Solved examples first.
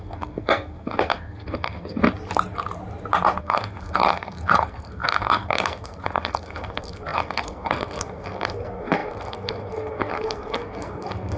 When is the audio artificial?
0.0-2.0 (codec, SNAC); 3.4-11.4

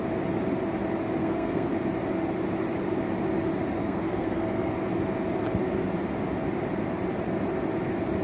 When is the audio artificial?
1.2-1.7 (codec, SNAC); 3.8-4.7

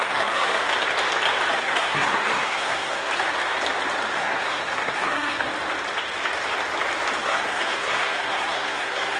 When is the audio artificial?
0.0-0.7 (codec, SNAC); 1.5-3.1; 4.2-5.5; 7.2-9.2